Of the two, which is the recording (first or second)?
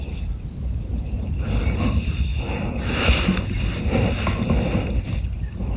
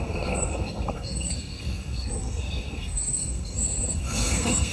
first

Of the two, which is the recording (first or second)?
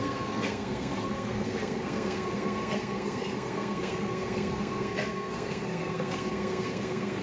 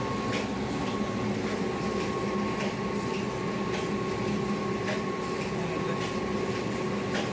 second